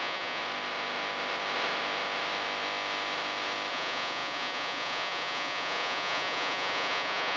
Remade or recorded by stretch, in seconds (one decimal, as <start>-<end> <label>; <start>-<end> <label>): 0.0-0.4 remade; 0.4-3.7 recorded; 3.7-7.4 remade